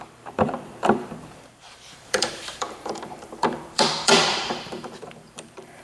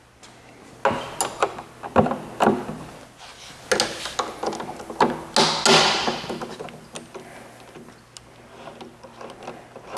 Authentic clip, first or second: second